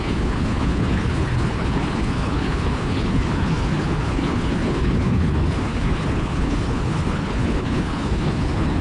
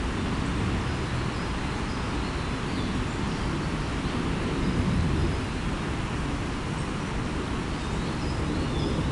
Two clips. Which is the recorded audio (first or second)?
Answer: second